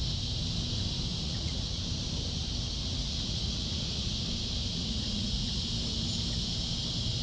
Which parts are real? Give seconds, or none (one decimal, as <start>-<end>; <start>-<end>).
0.0-1.1; 1.8-2.8; 4.2-4.8; 5.6-7.2